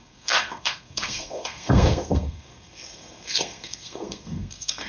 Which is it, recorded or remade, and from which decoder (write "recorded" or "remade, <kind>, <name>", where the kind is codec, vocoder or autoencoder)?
remade, codec, SNAC